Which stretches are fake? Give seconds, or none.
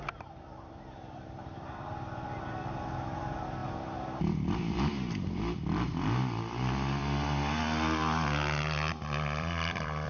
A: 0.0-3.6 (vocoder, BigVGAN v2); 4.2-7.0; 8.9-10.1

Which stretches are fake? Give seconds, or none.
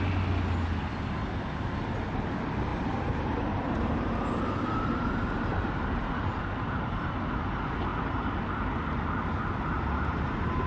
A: 2.7-6.4 (vocoder, BigVGAN v2)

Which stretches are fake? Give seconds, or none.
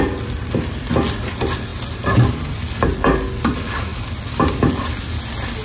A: none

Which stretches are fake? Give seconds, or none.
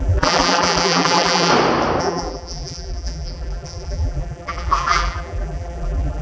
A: 0.0-1.5 (vocoder, BigVGAN v2); 2.0-6.2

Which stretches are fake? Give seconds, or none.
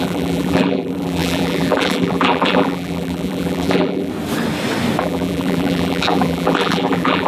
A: 0.0-4.1 (vocoder, BigVGAN v2); 5.0-7.3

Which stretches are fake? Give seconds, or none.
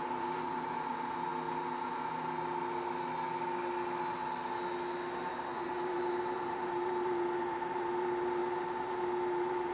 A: 0.0-1.3 (vocoder, BigVGAN v2); 5.5-9.7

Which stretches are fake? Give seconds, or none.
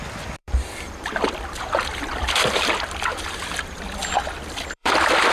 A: 0.4-3.6 (vocoder, BigVGAN v2); 4.0-5.3